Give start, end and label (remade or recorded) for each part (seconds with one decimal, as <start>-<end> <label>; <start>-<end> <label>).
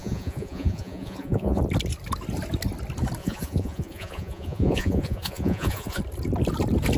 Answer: 0.0-1.6 remade; 1.6-3.2 recorded; 3.2-6.0 remade; 6.0-7.0 recorded